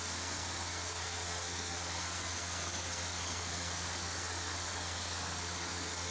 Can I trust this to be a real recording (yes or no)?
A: no